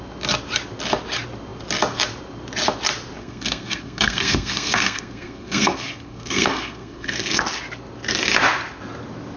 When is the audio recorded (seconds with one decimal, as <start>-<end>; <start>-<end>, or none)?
0.0-3.2; 7.4-9.4